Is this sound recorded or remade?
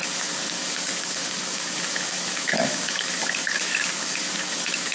remade